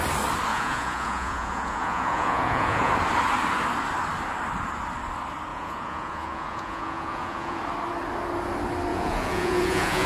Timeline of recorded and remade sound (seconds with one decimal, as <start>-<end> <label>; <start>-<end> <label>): 0.0-0.5 recorded; 0.5-2.9 remade; 2.9-5.5 recorded; 5.5-7.6 remade; 7.6-8.9 recorded; 8.9-10.1 remade